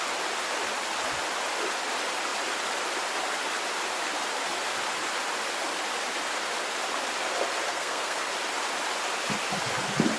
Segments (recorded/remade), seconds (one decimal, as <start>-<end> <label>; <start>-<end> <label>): 0.0-7.7 recorded; 7.7-8.3 remade; 8.3-10.2 recorded